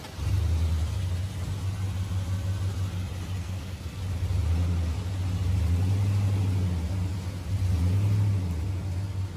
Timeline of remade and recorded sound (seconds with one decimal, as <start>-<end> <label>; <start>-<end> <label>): 0.0-3.4 recorded; 3.4-4.0 remade; 4.0-9.4 recorded